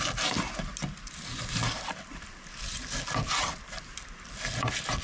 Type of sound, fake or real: real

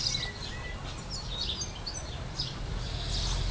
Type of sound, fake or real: real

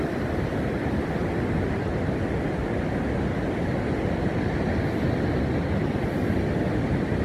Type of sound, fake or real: real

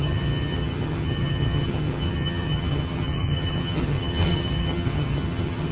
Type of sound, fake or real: fake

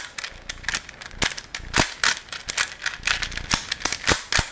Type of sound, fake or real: real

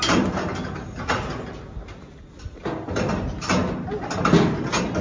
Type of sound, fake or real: real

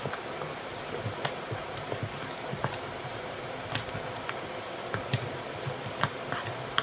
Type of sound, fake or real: real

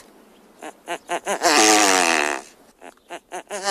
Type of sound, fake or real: real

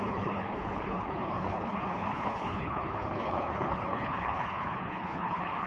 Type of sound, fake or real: fake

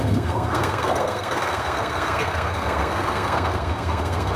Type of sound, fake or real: fake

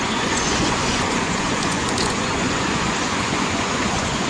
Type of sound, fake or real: fake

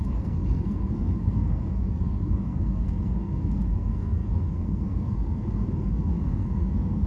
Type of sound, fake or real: fake